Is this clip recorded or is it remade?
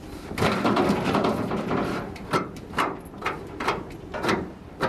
remade